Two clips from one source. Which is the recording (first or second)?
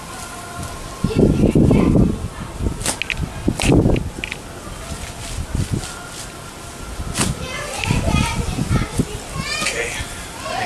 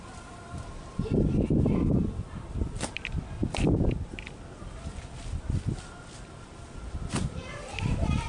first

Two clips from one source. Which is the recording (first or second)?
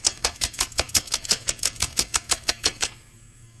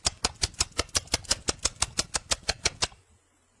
second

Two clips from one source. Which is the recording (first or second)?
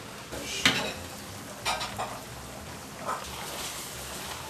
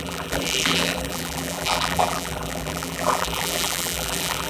first